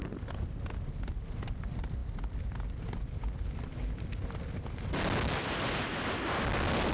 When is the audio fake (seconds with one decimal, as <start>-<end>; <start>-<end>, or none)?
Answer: none